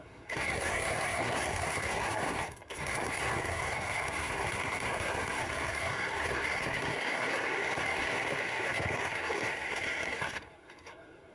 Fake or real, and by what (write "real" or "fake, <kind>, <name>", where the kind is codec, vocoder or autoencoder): fake, codec, SNAC